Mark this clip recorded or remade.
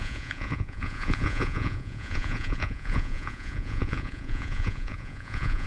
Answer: remade